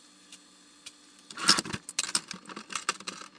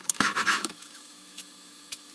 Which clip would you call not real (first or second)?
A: second